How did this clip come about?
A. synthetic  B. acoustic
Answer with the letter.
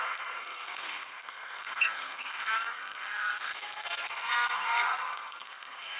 A